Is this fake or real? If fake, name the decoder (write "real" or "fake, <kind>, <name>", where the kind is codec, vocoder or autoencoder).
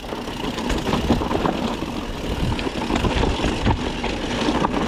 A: real